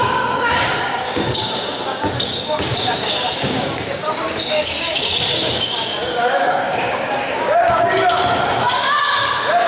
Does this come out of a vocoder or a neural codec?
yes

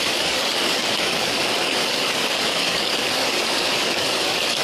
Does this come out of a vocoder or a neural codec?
yes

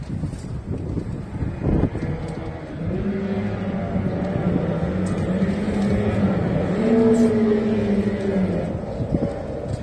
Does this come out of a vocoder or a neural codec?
no